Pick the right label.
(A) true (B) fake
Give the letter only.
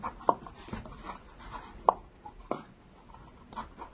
A